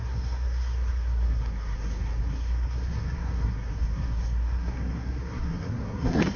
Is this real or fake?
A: fake